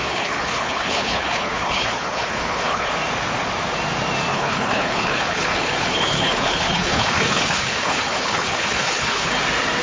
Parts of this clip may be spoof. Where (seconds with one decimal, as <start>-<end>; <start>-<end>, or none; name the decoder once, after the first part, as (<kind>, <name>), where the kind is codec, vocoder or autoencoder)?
0.0-2.9 (codec, HILCodec); 4.3-9.3